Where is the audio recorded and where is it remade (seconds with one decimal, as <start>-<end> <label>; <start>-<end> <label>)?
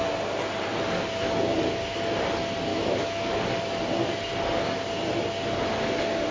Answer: 0.0-2.7 recorded; 2.7-3.4 remade; 3.4-6.3 recorded